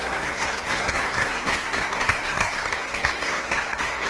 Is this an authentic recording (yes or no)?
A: no